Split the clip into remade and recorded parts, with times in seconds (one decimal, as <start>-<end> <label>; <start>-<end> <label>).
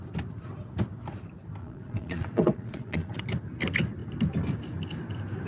0.0-1.6 recorded; 1.6-3.2 remade; 3.2-5.5 recorded